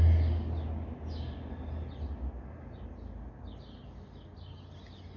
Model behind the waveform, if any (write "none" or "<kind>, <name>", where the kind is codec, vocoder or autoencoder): none